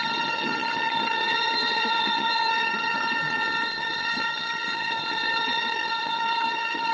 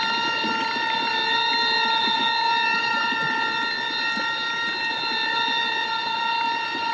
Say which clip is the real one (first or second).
second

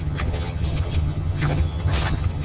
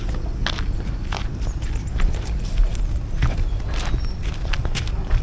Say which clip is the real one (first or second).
second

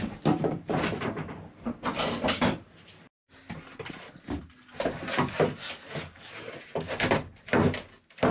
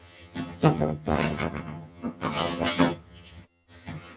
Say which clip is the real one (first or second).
first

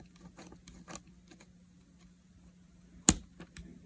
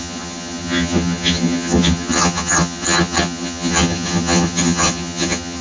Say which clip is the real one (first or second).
first